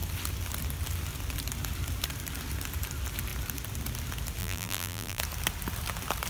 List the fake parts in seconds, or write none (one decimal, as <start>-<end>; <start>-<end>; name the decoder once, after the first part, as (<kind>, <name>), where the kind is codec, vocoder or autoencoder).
4.4-5.2 (vocoder, BigVGAN v2)